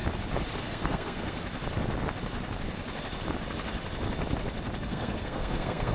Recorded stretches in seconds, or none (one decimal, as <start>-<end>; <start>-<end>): 0.0-0.6; 1.4-4.9